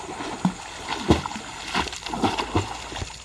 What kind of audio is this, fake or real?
real